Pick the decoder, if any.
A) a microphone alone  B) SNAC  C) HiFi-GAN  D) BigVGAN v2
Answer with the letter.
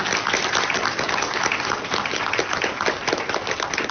A